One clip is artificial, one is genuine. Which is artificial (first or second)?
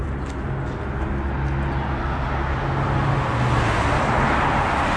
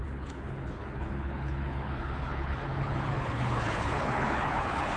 second